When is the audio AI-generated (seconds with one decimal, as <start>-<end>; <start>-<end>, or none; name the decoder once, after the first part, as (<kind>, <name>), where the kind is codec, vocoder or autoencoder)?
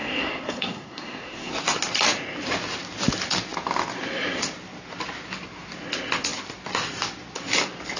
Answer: 0.0-1.5 (codec, SNAC)